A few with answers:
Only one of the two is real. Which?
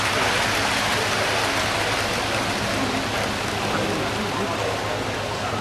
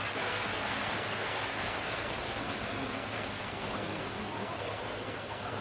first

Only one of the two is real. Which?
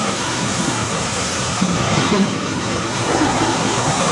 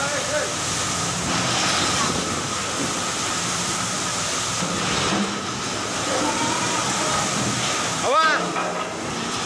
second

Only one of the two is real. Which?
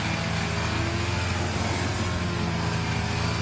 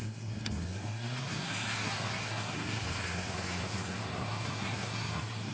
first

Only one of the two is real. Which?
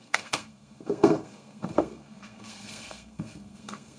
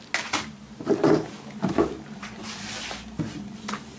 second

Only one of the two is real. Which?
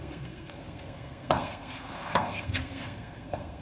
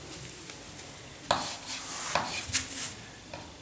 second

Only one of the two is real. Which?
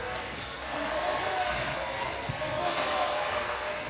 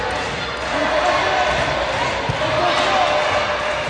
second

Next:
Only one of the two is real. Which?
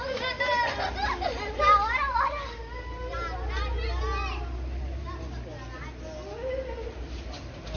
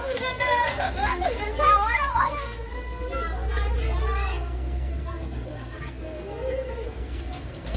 first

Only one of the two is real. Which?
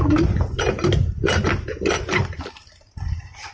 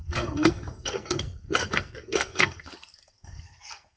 first